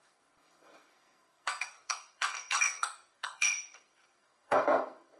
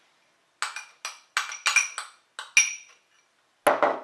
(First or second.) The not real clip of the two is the first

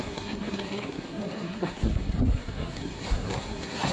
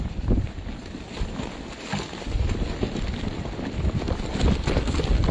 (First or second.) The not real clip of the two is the first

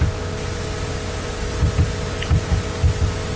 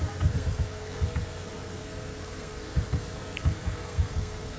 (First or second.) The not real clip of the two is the second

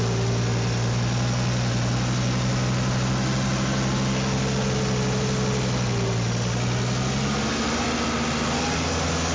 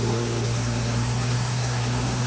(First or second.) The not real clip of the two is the second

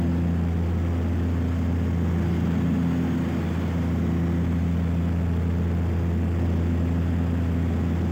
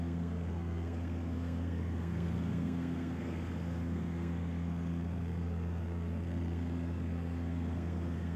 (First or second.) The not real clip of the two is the second